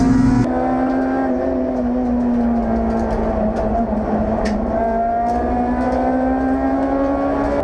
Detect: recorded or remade recorded